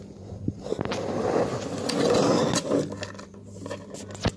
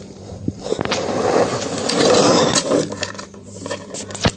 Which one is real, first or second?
first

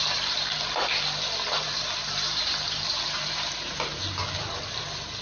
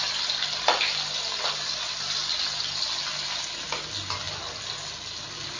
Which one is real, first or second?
second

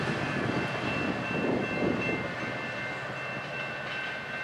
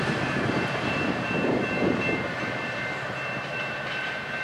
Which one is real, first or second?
first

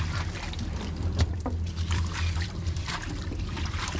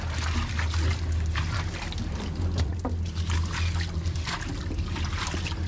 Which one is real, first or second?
second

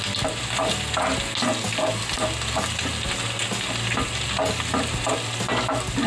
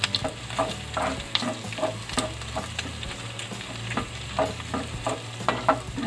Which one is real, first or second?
first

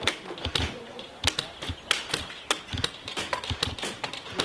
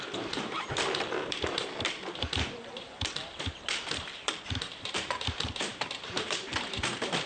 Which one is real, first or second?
first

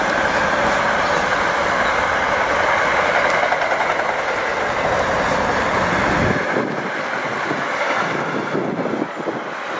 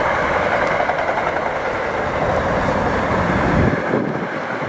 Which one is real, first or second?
first